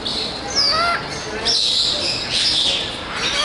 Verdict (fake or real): real